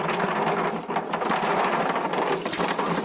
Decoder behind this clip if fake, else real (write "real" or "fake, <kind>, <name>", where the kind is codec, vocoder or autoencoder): real